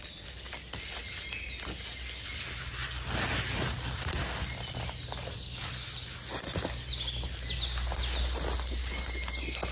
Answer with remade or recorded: recorded